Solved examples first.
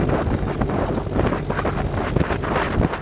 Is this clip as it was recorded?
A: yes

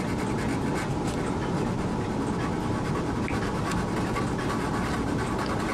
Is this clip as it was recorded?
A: yes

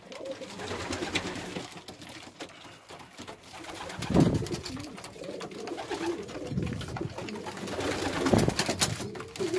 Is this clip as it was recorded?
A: yes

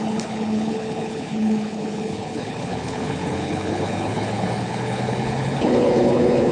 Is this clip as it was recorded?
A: no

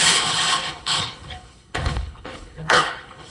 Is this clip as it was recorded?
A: no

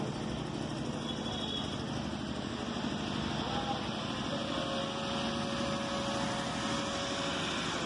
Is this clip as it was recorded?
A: yes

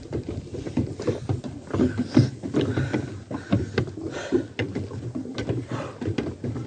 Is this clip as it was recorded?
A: yes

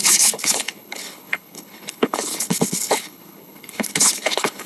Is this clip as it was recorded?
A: no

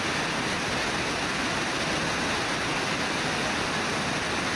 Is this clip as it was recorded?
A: yes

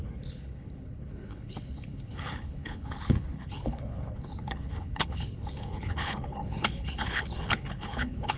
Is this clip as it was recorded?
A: no